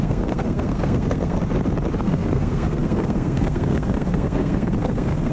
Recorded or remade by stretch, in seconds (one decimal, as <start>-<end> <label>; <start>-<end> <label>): 0.0-1.4 remade; 1.4-2.0 recorded; 2.0-5.3 remade